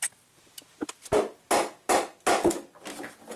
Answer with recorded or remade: recorded